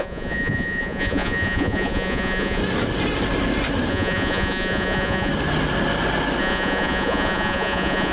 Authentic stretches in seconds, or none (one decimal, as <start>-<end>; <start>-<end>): 2.6-3.9; 5.3-6.4